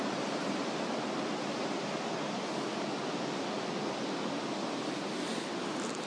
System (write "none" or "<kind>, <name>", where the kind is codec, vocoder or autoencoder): none